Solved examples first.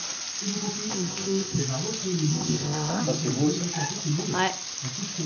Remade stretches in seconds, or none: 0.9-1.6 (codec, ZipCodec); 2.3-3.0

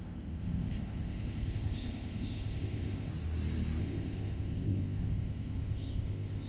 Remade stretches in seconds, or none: 0.0-3.1 (codec, ZipCodec); 3.8-6.5

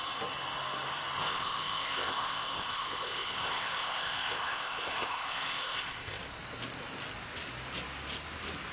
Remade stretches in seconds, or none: 1.2-6.2 (codec, ZipCodec)

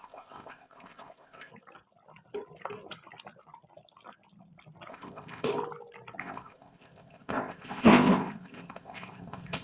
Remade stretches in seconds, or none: 0.0-1.5 (codec, ZipCodec); 4.9-5.5; 6.2-9.6

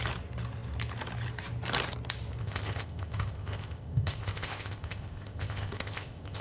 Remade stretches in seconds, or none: 2.4-6.4 (codec, ZipCodec)

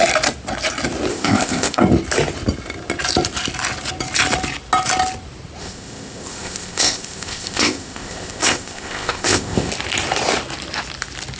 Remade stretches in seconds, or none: 1.1-1.8 (codec, ZipCodec); 5.6-9.7

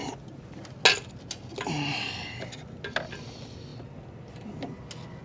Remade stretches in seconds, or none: none

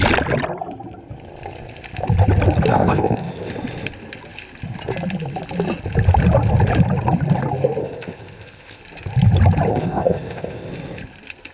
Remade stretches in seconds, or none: 2.7-3.5 (codec, ZipCodec); 7.8-8.8; 9.7-10.7